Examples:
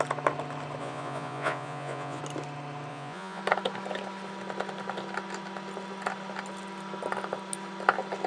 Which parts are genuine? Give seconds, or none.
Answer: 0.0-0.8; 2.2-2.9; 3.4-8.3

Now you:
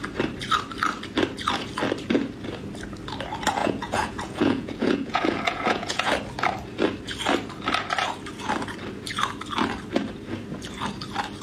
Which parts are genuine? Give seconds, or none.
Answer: 0.0-3.6; 6.1-11.4

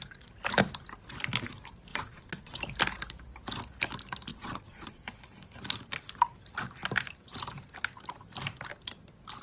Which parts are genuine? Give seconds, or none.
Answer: 0.0-1.9; 2.6-4.3; 5.0-9.4